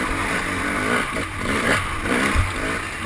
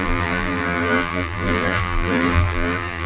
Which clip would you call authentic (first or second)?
first